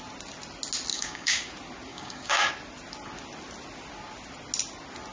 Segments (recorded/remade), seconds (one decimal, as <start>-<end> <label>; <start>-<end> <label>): 0.0-0.9 recorded; 0.9-1.5 remade; 1.5-1.9 recorded; 1.9-2.5 remade; 2.5-5.1 recorded